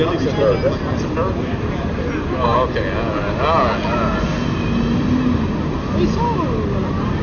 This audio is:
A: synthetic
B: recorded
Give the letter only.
B